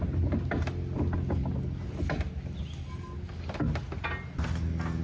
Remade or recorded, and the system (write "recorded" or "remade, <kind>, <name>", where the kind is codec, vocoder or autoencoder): recorded